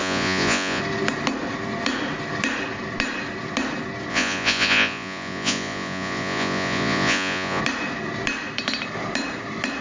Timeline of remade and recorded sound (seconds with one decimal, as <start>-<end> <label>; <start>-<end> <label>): 0.0-0.8 remade; 0.8-4.1 recorded; 4.1-7.6 remade; 7.6-9.8 recorded